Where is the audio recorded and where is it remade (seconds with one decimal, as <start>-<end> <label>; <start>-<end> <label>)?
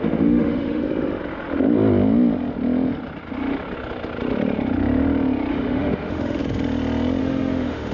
0.0-0.8 remade; 0.8-5.5 recorded; 5.5-6.4 remade; 6.4-7.2 recorded; 7.2-7.9 remade